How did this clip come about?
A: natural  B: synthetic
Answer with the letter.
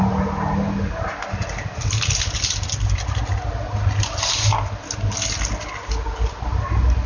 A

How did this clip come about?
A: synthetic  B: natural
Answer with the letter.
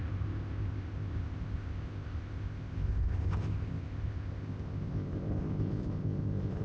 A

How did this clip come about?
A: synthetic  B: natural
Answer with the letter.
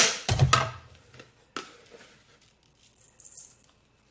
B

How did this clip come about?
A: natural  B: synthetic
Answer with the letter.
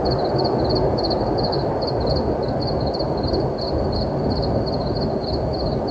A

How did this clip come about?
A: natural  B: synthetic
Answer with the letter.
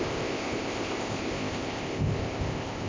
B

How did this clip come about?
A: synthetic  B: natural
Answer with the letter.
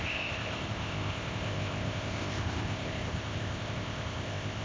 A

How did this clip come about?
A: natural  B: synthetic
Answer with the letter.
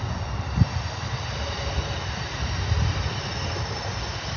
A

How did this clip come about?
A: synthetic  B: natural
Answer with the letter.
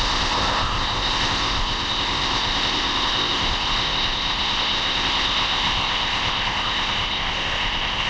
A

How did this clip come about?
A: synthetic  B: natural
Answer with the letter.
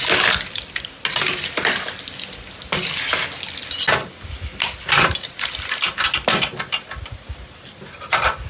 B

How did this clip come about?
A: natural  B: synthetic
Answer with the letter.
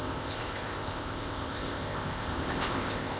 B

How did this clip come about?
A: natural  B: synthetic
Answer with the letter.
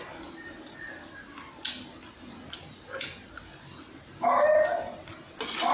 A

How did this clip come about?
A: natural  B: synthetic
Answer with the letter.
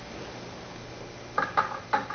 A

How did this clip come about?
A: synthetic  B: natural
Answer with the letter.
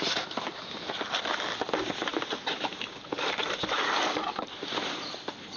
B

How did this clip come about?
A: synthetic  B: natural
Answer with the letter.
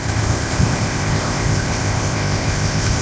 A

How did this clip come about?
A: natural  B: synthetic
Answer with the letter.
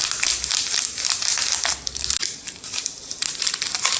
A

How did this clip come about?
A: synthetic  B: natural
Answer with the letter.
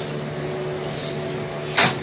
B